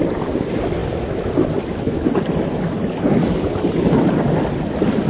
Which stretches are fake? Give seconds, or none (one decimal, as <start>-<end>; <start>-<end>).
none